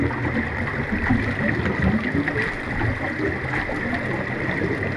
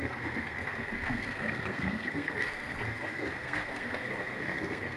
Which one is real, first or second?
first